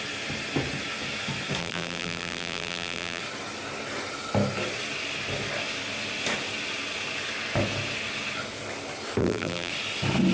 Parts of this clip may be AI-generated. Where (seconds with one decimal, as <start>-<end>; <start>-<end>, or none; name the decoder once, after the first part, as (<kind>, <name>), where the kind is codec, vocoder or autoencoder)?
1.6-3.2 (vocoder, BigVGAN v2); 9.2-9.7